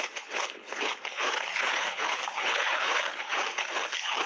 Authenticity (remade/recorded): remade